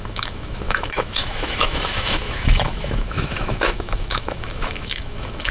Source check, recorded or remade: remade